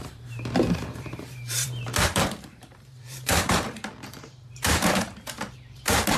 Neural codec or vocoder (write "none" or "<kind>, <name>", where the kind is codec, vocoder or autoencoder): vocoder, BigVGAN v2